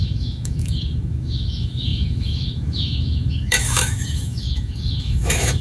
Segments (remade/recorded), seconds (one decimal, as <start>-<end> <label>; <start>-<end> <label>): 0.0-5.6 remade